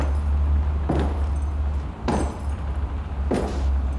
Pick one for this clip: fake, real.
real